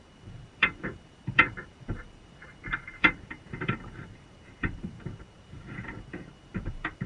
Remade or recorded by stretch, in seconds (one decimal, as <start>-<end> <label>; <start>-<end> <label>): 0.0-7.1 remade